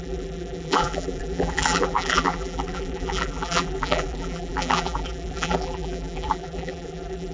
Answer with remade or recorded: remade